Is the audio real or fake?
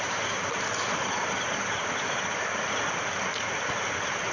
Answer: real